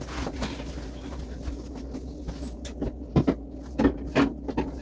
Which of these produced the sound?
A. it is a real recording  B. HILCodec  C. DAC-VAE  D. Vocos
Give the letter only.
A